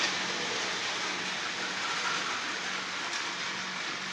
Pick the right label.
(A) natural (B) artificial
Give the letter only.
A